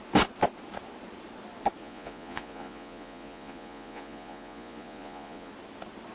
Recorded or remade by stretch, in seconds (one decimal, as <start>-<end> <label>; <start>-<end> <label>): 0.0-1.8 recorded; 1.8-5.5 remade; 5.5-6.1 recorded